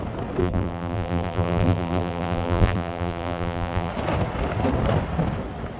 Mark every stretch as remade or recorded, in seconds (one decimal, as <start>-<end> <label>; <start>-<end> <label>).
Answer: 0.0-0.4 recorded; 0.4-3.9 remade; 3.9-5.8 recorded